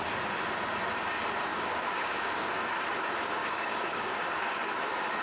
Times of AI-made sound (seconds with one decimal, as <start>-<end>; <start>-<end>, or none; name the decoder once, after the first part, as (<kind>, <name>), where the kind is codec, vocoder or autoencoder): 1.5-2.5 (codec, DAC); 3.4-4.7